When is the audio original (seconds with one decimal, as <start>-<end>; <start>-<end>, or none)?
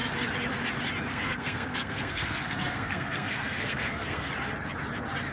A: 0.0-1.1; 4.3-5.3